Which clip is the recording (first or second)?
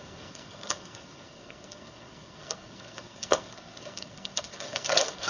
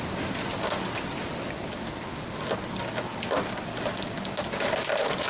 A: second